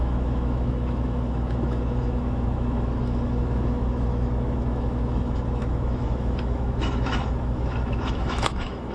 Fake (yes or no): yes